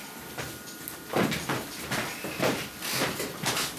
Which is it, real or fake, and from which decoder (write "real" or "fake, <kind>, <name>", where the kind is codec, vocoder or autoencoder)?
real